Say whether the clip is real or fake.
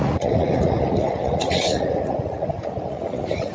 fake